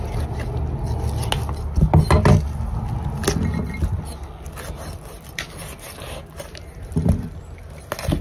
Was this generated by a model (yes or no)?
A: no